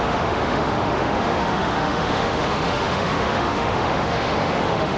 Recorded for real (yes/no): no